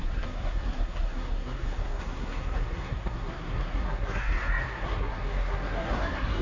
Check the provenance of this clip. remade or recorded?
remade